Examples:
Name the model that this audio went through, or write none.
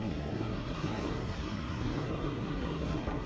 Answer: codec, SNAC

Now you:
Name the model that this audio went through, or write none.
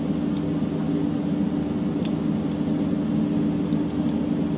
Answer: none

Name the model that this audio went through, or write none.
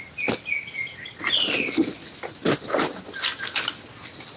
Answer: none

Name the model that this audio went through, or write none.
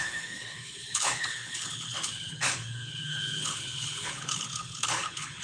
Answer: codec, HILCodec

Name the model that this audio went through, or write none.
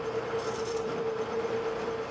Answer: none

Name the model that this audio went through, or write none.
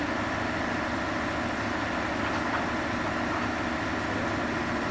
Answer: none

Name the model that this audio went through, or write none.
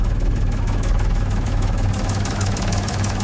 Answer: autoencoder, DAC-VAE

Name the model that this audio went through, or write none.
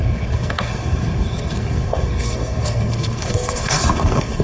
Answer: codec, SNAC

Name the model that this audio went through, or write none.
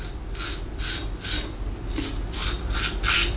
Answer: none